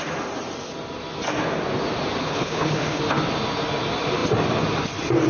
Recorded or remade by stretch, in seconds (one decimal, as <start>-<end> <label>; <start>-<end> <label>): 0.0-2.2 recorded; 2.2-3.0 remade; 3.0-5.3 recorded